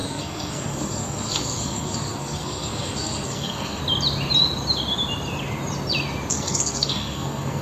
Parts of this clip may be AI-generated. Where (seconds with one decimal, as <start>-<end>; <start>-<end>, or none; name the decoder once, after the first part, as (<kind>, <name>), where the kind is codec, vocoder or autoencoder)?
0.0-3.8 (codec, SNAC); 6.3-7.6

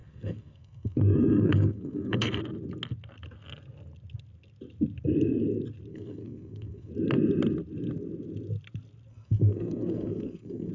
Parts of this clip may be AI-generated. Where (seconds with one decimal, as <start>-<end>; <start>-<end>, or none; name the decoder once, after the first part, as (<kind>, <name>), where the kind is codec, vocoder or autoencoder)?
0.0-2.4 (codec, SNAC); 5.9-6.9; 9.1-10.7

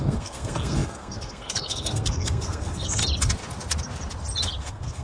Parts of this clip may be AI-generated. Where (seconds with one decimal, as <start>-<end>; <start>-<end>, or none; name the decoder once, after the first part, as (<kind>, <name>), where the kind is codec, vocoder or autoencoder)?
0.0-3.0 (codec, SNAC); 4.6-5.0